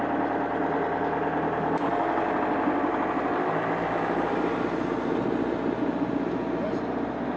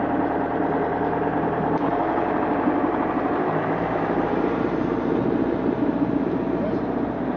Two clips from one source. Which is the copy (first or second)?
second